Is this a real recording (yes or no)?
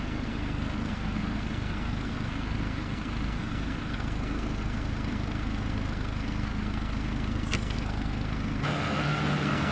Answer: no